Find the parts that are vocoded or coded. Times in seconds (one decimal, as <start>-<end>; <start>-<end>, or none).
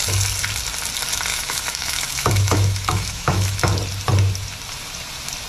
1.3-3.6